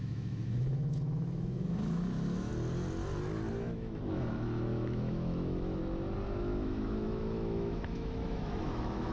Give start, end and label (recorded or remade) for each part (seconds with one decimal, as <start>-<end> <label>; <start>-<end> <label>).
0.0-2.5 remade; 2.5-3.5 recorded; 3.5-5.8 remade; 5.8-6.4 recorded; 6.4-9.1 remade